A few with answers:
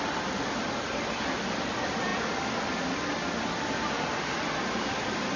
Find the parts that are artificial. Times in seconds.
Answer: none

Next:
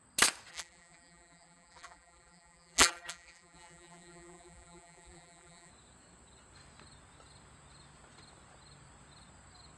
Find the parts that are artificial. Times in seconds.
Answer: 0.5-5.7 (vocoder, BigVGAN v2)

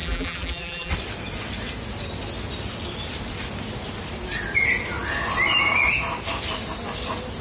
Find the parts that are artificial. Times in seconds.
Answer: 0.0-0.9 (vocoder, BigVGAN v2)

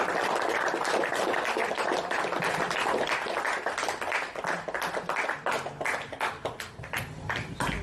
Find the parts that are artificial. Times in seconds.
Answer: none

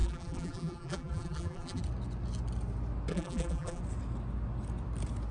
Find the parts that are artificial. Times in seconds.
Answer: 0.0-1.8 (vocoder, BigVGAN v2); 3.1-3.8

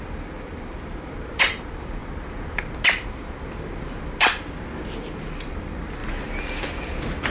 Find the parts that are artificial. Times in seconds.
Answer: 0.0-2.0 (vocoder, BigVGAN v2); 2.9-6.0